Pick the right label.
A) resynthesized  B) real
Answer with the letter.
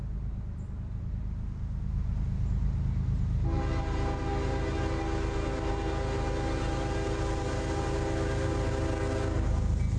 B